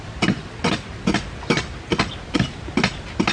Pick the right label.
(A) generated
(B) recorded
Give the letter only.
B